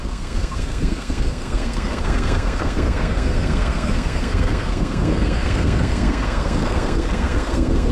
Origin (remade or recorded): remade